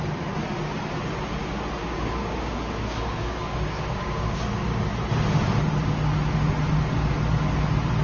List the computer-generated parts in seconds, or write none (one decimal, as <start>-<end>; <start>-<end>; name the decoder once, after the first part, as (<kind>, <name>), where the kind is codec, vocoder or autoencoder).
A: 1.8-4.8 (codec, DAC)